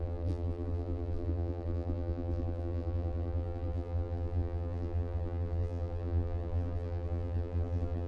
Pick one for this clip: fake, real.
fake